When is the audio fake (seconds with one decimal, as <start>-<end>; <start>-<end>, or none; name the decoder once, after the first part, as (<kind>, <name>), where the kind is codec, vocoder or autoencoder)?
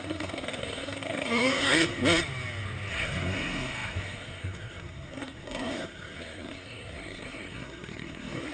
0.0-2.0 (codec, SNAC); 2.9-8.5